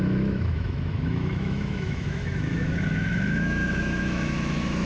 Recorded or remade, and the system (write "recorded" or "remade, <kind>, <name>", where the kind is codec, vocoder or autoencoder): remade, autoencoder, DAC-VAE